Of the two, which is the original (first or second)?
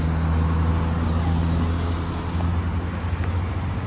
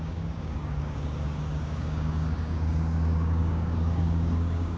first